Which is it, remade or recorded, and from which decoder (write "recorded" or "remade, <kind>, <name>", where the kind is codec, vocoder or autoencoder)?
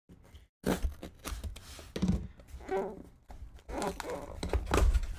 recorded